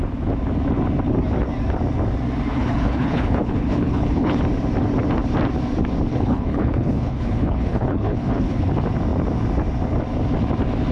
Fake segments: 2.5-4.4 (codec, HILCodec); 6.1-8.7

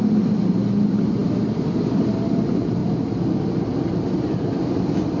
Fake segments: none